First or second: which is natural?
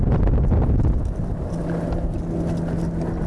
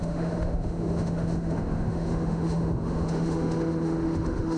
first